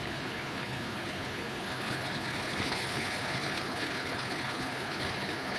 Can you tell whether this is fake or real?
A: fake